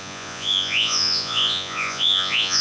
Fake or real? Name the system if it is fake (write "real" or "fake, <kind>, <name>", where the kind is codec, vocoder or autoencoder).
fake, vocoder, Vocos